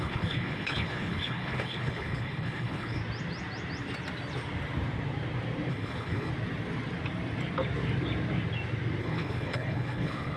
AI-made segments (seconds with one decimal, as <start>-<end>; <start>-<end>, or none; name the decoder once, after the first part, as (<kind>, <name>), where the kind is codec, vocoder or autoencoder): 0.0-3.0 (codec, HILCodec); 5.7-6.3; 9.0-10.4